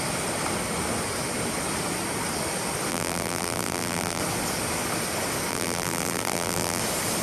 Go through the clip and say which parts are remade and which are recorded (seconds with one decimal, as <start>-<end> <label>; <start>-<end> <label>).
0.0-2.9 recorded; 2.9-4.2 remade; 4.2-5.5 recorded; 5.5-6.8 remade; 6.8-7.2 recorded

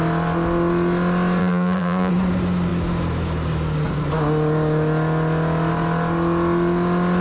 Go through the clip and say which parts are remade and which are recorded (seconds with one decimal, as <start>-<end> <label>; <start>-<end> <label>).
0.0-1.4 recorded; 1.4-2.1 remade; 2.1-7.2 recorded

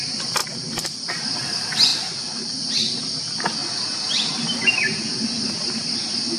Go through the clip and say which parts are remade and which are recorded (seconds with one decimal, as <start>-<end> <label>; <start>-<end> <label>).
0.0-0.4 recorded; 0.4-1.1 remade; 1.1-1.9 recorded; 1.9-2.5 remade; 2.5-6.4 recorded

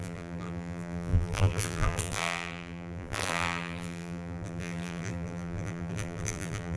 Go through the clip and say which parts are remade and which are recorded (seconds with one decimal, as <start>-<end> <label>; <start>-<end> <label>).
0.0-6.8 remade

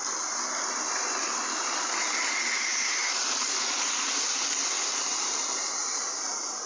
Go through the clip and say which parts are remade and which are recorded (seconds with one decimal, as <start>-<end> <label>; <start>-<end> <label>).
0.0-6.7 recorded

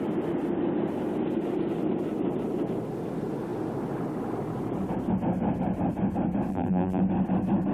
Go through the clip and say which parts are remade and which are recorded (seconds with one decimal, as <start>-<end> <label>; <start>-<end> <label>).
0.0-6.5 recorded; 6.5-7.0 remade; 7.0-7.7 recorded

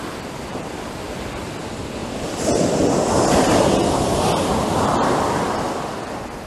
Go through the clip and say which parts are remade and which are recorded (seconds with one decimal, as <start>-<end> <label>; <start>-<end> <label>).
0.0-6.5 remade

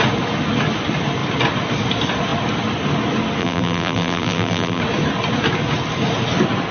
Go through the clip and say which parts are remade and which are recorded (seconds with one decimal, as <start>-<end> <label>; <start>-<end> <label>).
0.0-3.4 recorded; 3.4-4.8 remade; 4.8-6.7 recorded